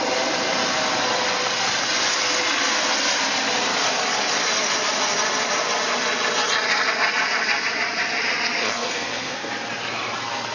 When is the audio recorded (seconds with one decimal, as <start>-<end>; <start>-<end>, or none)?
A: 0.0-8.6; 9.5-10.5

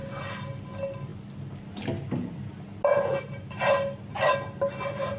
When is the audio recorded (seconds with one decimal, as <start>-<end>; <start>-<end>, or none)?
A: 0.0-5.2

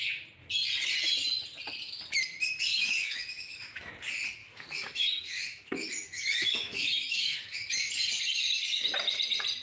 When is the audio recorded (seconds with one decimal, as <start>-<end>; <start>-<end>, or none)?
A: 0.0-2.7; 3.9-4.4; 7.7-9.6

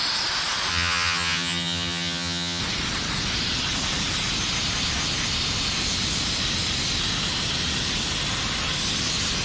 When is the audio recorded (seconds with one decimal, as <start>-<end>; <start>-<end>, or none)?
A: 0.0-0.7; 2.6-9.4

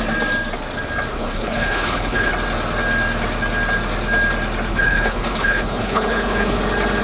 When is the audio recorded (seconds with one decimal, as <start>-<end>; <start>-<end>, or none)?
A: 0.0-1.1; 2.3-4.7; 6.6-7.0

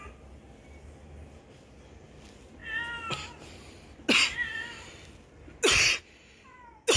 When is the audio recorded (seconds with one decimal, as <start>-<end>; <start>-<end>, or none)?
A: 0.0-7.0